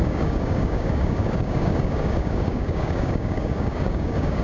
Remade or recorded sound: remade